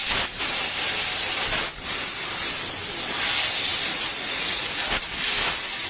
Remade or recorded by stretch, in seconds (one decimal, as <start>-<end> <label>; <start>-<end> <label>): 0.0-3.9 recorded; 3.9-5.0 remade; 5.0-5.9 recorded